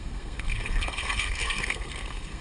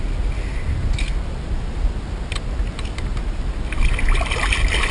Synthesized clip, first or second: first